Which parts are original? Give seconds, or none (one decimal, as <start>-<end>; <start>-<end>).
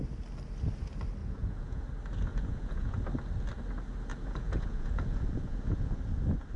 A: 0.0-1.2; 1.9-2.3; 3.0-4.1; 6.0-6.6